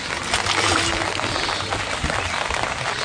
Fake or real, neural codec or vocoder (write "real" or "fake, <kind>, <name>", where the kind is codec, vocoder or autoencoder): real